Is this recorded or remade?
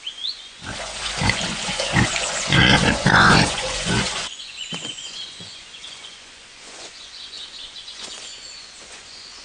remade